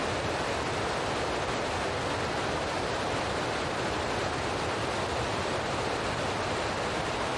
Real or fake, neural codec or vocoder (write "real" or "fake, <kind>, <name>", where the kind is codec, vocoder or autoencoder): real